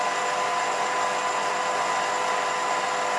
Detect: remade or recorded recorded